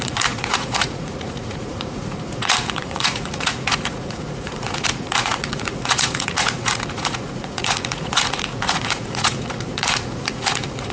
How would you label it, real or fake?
fake